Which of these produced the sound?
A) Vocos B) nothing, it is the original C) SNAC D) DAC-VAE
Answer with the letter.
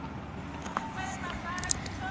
B